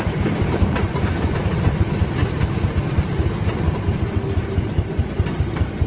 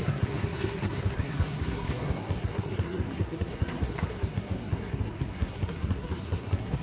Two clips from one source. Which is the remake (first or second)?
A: second